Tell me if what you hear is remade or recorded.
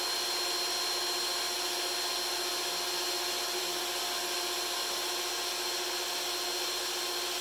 recorded